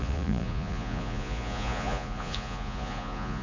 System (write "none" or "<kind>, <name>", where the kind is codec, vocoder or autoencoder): vocoder, Vocos